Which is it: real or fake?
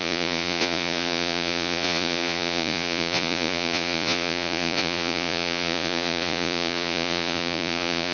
fake